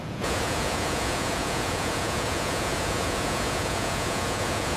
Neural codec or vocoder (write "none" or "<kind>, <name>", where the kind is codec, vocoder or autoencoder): vocoder, Vocos